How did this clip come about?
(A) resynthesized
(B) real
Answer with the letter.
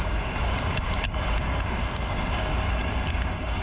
A